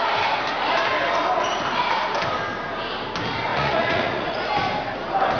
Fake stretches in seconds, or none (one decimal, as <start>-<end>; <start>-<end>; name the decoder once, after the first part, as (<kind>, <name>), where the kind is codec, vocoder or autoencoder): 3.5-4.5 (vocoder, Vocos)